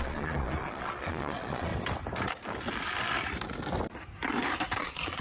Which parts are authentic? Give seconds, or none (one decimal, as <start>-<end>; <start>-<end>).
1.7-4.8